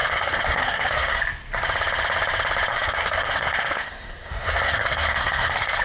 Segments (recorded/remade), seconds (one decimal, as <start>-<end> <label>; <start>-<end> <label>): 0.0-1.2 remade; 1.2-2.7 recorded; 2.7-5.8 remade